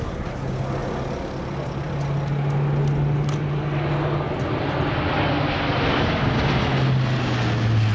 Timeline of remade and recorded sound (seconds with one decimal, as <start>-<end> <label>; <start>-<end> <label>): 0.0-7.9 recorded